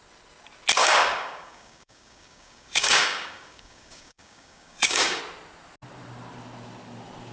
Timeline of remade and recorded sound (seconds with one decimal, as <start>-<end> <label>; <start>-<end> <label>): 0.0-0.8 recorded; 0.8-5.2 remade; 5.2-7.3 recorded